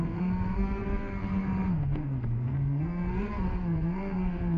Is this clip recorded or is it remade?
remade